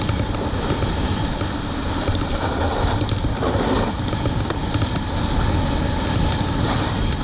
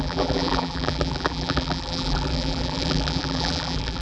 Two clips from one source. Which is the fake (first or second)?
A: second